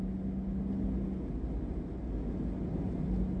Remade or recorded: recorded